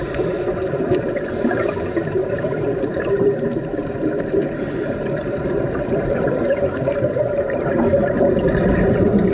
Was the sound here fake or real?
fake